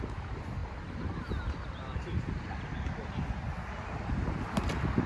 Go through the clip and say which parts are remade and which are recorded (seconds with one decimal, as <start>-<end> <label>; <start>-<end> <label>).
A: 0.0-0.6 recorded; 0.6-2.6 remade; 2.6-5.1 recorded